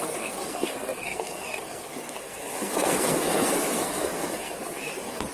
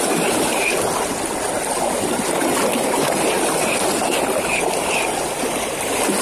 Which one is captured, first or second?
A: second